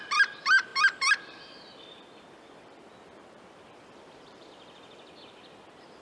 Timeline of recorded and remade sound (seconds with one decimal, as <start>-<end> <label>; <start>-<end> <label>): 0.0-6.0 remade